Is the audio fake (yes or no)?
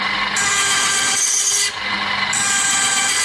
no